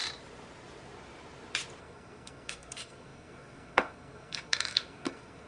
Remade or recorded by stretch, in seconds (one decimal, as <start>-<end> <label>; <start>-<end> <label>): 0.0-1.8 recorded; 1.8-5.5 remade